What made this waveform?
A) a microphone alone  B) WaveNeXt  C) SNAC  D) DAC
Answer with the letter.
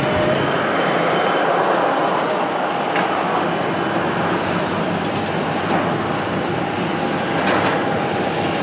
A